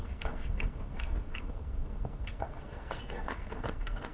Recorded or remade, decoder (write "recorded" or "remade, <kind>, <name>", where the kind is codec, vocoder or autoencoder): remade, codec, SNAC